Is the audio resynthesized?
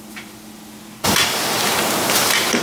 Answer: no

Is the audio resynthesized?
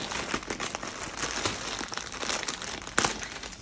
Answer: no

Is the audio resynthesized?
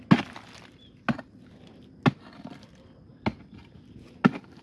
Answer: no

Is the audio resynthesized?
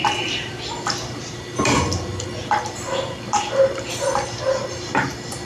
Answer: yes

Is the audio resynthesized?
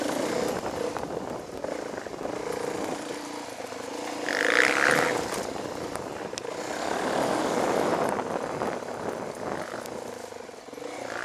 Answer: no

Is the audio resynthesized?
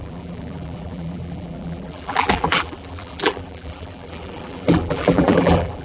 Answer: yes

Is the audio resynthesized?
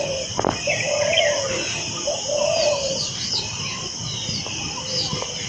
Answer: no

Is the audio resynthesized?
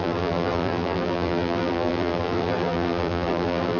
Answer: yes